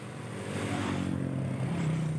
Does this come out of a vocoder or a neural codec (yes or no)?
no